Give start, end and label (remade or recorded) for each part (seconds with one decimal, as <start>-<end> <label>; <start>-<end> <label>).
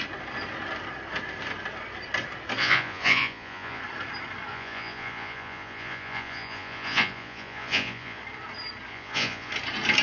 0.0-2.6 recorded; 2.6-3.8 remade; 3.8-4.5 recorded; 4.5-8.2 remade; 8.2-8.9 recorded; 8.9-9.5 remade; 9.5-10.0 recorded